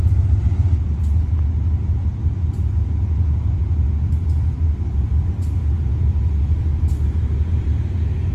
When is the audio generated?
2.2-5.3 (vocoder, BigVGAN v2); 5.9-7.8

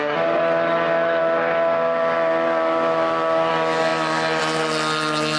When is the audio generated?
none

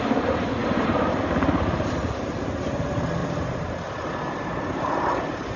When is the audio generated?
none